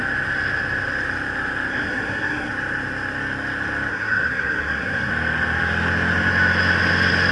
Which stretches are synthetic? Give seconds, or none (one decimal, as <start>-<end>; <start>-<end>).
1.7-2.5; 3.9-5.1